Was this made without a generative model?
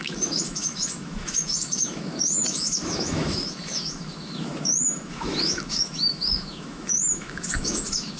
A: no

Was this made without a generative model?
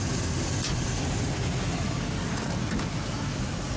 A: yes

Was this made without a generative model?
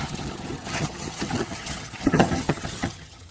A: no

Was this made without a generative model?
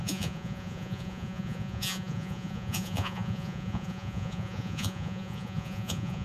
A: no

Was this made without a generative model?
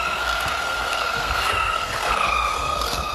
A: no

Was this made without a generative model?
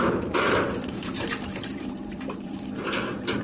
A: no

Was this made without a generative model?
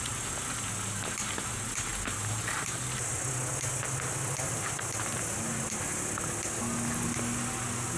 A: yes